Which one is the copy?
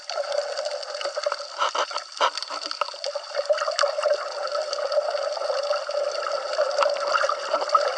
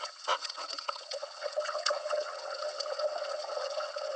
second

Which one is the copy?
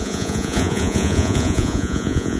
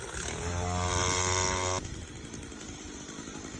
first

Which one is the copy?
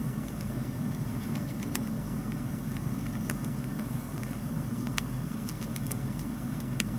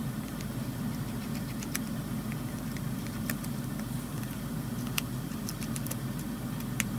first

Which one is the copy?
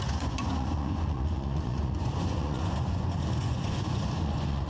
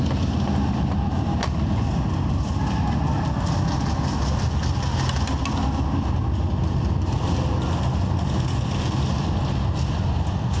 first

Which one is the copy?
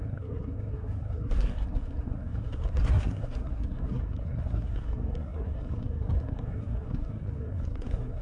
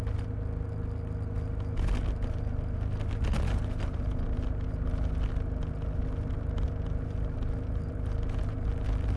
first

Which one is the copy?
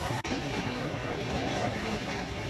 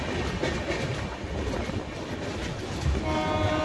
first